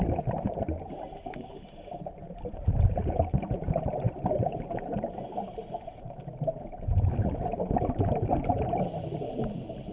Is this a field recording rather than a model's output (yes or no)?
no